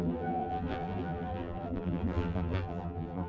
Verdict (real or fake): fake